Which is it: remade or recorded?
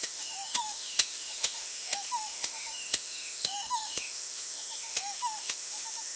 remade